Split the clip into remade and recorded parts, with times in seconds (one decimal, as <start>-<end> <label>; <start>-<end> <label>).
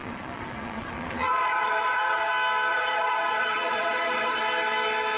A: 0.0-2.3 remade; 2.3-2.7 recorded; 2.7-4.4 remade; 4.4-5.2 recorded